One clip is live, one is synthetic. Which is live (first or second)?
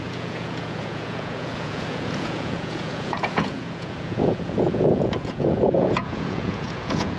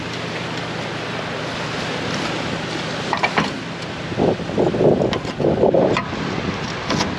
second